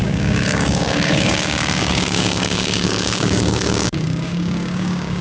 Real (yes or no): no